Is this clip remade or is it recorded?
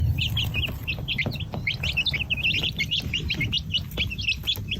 recorded